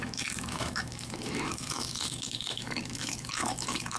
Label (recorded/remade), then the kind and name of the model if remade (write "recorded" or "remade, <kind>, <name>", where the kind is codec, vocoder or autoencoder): remade, autoencoder, DAC-VAE